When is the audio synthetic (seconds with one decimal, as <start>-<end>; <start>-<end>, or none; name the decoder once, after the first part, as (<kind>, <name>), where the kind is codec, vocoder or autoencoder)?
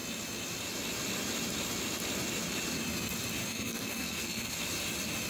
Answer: 3.4-4.6 (codec, SNAC)